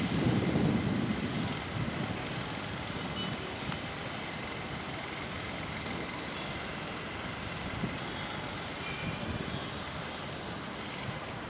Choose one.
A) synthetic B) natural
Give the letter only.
A